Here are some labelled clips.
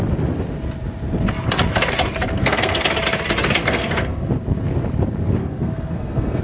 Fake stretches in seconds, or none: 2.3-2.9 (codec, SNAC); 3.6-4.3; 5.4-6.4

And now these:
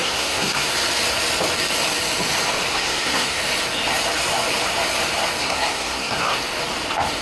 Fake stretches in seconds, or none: 0.0-0.7 (codec, SNAC); 2.7-3.4; 5.4-6.4

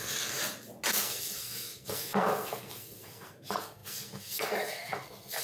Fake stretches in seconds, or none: 0.0-0.4 (codec, SNAC); 0.9-5.4

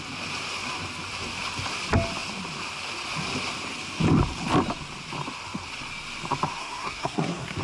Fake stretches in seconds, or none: 6.6-7.6 (codec, SNAC)

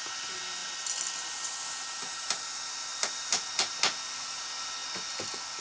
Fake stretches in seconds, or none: none

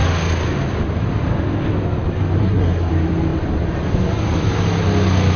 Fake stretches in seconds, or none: 2.4-2.9 (codec, SNAC)

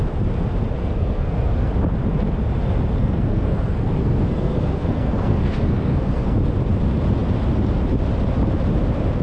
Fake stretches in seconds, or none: 0.8-1.7 (codec, SNAC); 3.0-6.4

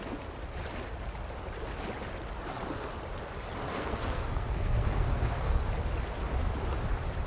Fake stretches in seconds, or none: 3.7-5.6 (codec, SNAC)